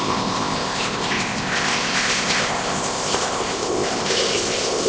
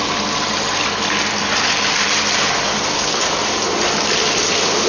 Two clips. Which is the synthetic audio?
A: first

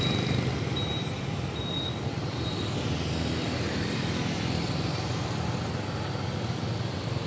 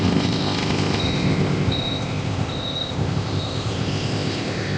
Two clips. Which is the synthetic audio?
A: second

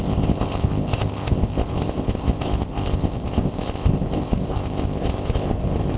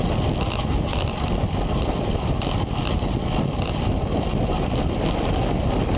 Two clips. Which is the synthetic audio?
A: first